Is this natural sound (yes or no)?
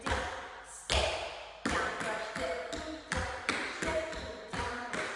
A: yes